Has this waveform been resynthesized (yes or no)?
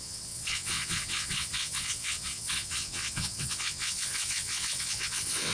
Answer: yes